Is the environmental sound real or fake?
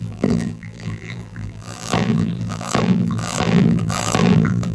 fake